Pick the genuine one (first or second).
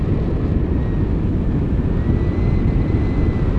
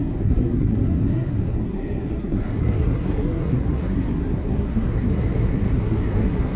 first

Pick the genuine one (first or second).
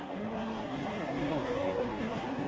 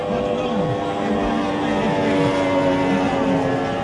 second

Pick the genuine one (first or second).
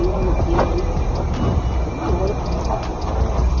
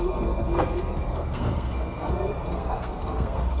first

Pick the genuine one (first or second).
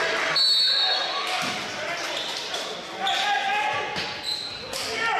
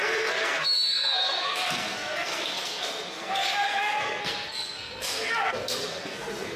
first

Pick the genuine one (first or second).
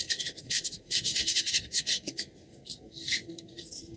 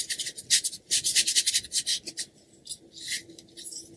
second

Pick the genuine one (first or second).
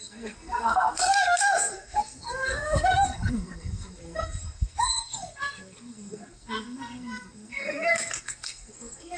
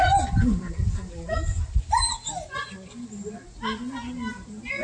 second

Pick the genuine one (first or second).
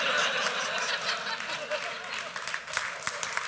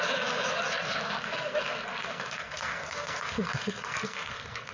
first